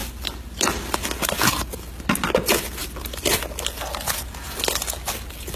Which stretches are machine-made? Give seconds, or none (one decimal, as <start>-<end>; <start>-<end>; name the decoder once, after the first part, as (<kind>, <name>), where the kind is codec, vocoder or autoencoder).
none